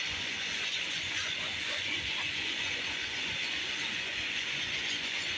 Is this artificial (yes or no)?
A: yes